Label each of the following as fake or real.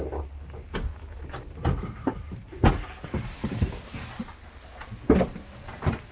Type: real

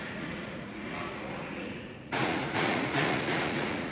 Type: fake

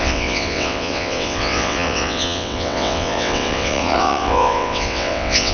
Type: fake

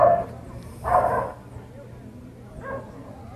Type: real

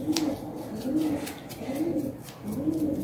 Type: real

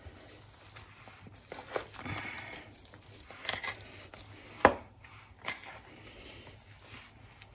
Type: real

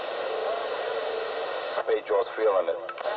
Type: real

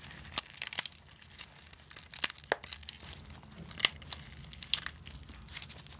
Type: real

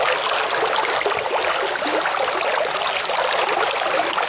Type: real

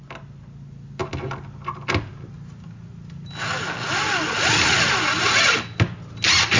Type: real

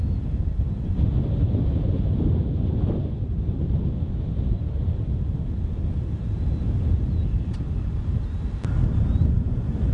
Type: real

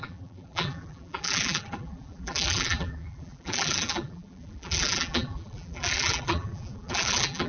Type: fake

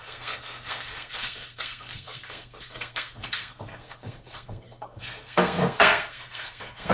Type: fake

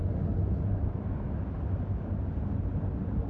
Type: real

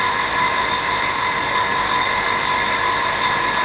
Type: real